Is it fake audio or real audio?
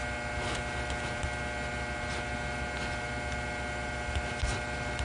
real